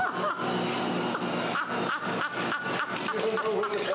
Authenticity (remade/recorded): recorded